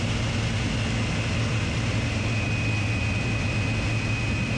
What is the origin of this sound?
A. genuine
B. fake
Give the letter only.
A